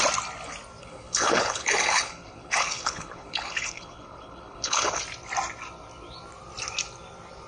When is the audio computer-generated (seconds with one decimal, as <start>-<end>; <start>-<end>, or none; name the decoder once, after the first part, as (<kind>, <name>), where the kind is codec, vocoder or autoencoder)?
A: 0.8-5.0 (codec, HILCodec)